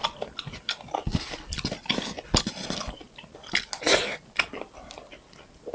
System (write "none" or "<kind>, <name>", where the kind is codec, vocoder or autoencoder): none